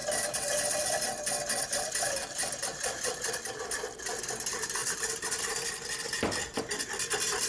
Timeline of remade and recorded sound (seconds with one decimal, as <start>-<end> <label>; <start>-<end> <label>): 0.0-7.5 recorded